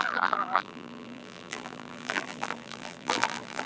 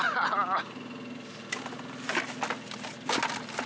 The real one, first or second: second